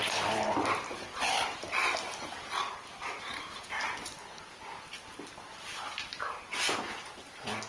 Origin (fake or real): real